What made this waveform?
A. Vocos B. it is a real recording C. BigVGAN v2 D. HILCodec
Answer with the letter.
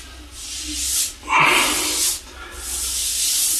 B